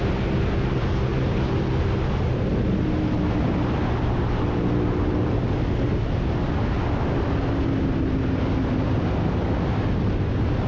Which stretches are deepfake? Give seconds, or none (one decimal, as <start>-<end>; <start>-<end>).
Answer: none